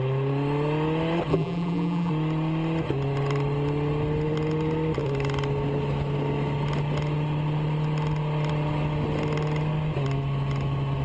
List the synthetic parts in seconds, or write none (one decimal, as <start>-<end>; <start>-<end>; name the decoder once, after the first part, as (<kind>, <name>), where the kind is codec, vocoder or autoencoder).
1.3-2.1 (vocoder, BigVGAN v2)